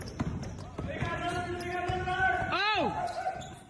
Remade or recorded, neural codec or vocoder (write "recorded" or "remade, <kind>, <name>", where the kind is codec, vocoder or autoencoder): recorded